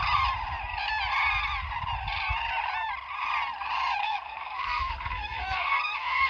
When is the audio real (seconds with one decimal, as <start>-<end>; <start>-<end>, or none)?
0.0-4.0